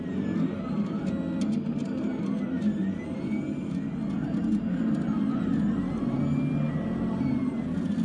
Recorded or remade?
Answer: recorded